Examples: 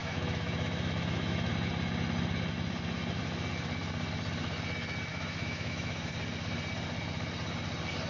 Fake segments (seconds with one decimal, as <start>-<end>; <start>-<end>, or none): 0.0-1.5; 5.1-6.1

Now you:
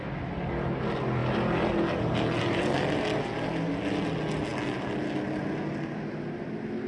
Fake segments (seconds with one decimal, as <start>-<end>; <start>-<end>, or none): none

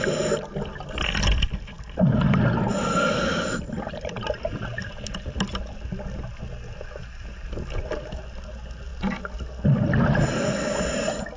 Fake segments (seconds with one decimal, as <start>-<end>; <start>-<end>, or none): none

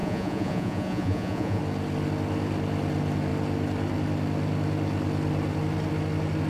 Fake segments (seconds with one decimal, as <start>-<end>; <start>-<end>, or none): 0.0-1.6